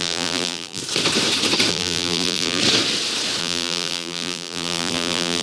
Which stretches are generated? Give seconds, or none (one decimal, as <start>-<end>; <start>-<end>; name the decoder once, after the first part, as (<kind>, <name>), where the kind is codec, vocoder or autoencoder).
0.0-0.8 (vocoder, BigVGAN v2); 1.7-2.6; 3.4-5.4